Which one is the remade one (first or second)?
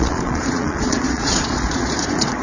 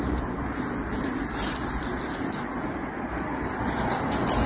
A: first